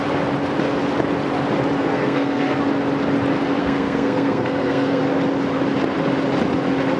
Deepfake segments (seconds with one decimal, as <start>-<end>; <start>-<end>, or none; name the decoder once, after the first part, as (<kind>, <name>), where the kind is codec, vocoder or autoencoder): 1.8-2.6 (codec, SNAC); 3.6-5.0